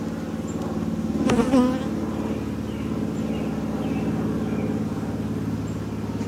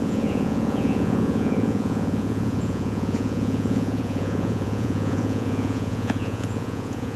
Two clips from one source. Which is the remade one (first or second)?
second